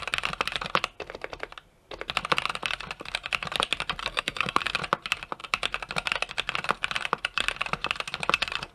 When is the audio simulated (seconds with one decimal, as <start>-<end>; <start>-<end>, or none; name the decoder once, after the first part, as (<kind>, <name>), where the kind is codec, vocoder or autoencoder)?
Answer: 4.0-4.6 (codec, SNAC)